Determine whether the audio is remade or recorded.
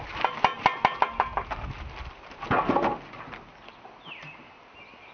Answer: recorded